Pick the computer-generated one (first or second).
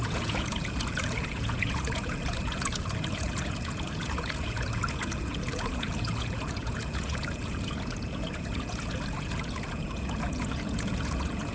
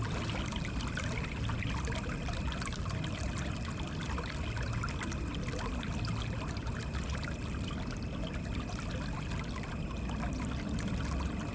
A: first